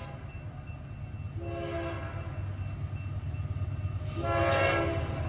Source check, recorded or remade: recorded